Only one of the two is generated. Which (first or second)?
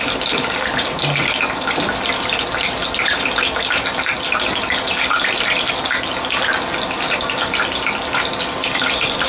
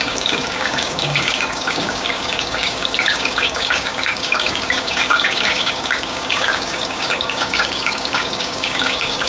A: second